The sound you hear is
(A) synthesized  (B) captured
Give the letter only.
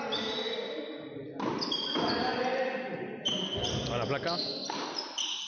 B